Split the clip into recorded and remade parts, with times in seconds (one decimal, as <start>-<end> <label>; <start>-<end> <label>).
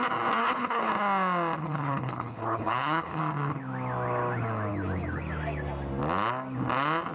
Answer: 0.0-0.4 recorded; 0.4-0.9 remade; 0.9-1.6 recorded; 1.6-3.2 remade; 3.2-7.1 recorded